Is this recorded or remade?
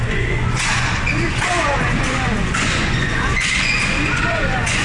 remade